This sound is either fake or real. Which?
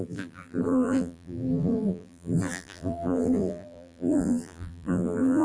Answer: fake